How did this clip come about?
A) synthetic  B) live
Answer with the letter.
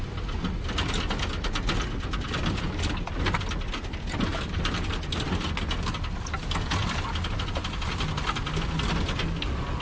B